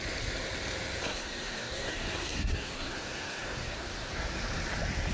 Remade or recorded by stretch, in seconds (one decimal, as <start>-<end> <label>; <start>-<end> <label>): 0.0-1.0 recorded; 1.0-4.1 remade; 4.1-5.1 recorded

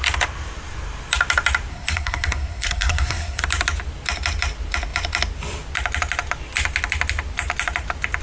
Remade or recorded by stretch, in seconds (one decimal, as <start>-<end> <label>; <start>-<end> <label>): 0.0-1.7 recorded; 1.7-3.4 remade; 3.4-8.2 recorded